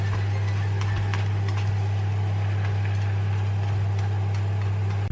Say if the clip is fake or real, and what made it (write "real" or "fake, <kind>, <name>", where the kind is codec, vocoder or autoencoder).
real